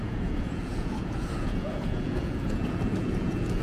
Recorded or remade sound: remade